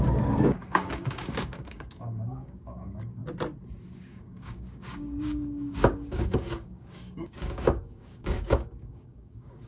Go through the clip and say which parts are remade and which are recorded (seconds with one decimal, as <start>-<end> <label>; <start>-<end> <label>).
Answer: 0.0-3.2 remade; 3.2-4.0 recorded; 4.0-9.7 remade